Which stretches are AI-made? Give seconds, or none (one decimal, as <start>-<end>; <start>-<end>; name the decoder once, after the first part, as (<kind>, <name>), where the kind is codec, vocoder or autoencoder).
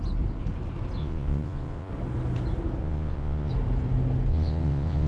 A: 1.0-1.9 (vocoder, Vocos); 2.8-3.5; 4.3-5.1